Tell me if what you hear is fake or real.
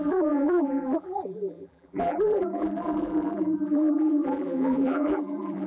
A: fake